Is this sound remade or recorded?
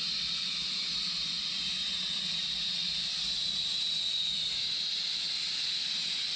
recorded